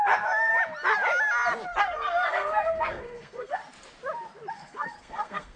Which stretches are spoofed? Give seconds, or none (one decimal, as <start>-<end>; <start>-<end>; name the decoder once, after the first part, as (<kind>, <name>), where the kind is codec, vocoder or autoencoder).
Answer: 0.0-0.5 (codec, SNAC); 1.8-3.6; 4.5-5.6